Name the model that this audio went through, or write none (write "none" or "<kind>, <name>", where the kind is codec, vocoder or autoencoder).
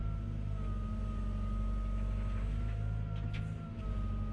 none